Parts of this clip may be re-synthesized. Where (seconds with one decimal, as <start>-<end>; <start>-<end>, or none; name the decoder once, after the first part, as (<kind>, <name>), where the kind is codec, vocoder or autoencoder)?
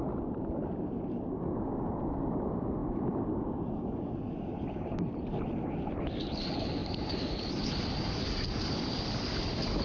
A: none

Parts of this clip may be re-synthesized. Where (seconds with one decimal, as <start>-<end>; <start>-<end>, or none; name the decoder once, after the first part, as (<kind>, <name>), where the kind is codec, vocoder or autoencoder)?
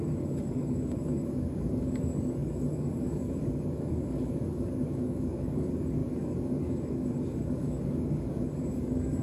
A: 0.0-9.2 (codec, DAC)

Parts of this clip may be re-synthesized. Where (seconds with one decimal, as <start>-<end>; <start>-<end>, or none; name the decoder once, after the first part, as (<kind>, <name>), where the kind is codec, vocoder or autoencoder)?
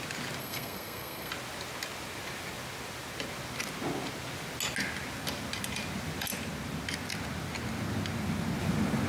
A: 0.4-1.3 (codec, SNAC)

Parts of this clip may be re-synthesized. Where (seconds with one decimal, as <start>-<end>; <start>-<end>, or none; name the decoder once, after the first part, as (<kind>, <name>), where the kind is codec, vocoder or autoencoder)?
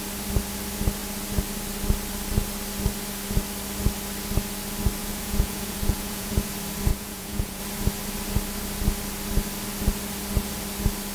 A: 5.0-6.5 (vocoder, Vocos); 6.9-7.6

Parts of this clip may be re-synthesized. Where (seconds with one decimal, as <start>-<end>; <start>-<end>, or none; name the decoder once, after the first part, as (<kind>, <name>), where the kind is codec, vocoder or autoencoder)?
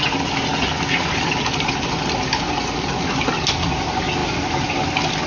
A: 0.5-3.0 (vocoder, BigVGAN v2); 4.2-4.7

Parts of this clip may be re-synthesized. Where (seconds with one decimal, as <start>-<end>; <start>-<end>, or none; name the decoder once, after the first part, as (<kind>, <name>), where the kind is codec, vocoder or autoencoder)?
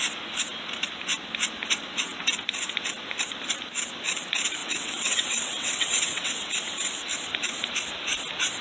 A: 4.6-6.5 (vocoder, WaveNeXt)